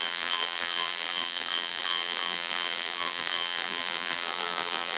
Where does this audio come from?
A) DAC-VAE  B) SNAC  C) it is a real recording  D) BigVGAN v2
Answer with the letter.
D